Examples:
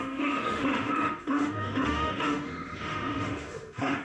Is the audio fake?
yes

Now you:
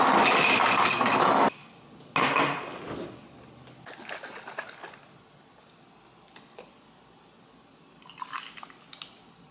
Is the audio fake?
no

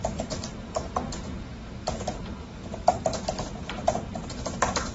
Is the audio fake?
no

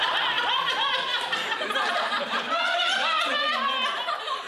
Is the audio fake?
no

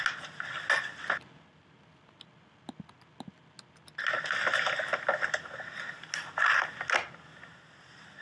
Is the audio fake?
no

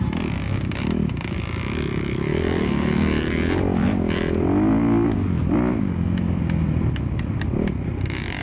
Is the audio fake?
no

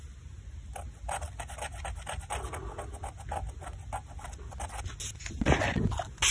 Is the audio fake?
no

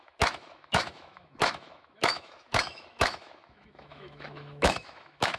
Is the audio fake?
yes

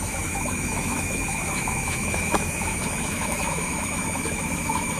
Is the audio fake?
yes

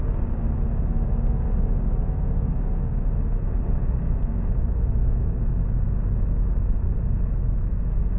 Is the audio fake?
no